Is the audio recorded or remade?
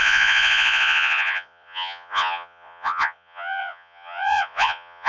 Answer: remade